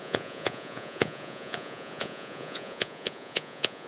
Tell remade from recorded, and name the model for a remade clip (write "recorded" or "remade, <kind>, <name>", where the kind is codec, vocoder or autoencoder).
remade, vocoder, Vocos